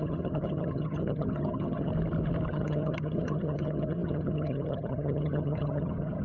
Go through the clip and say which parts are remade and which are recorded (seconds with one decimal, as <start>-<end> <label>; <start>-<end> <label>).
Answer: 0.0-1.9 remade; 1.9-2.5 recorded; 2.5-6.2 remade